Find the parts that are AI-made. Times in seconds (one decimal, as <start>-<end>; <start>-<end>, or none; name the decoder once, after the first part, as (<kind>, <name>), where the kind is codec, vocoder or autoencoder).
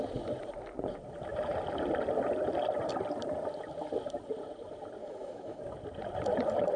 5.0-5.6 (autoencoder, DAC-VAE)